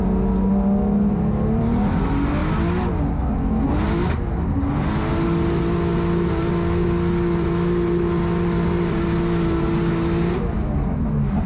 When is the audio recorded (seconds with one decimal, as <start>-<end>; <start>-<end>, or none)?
0.0-11.5